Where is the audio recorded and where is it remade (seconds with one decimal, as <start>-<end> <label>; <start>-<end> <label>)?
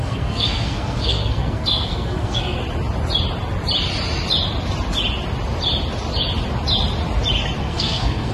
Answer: 0.0-2.6 remade; 2.6-7.6 recorded; 7.6-8.3 remade